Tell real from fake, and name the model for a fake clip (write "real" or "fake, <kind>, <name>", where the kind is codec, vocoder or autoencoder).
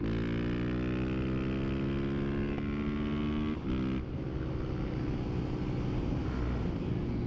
real